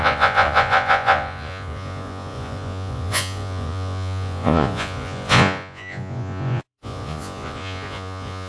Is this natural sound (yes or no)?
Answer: no